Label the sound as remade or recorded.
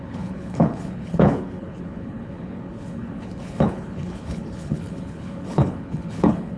remade